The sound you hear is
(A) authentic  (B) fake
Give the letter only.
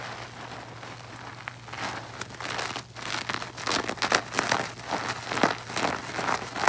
A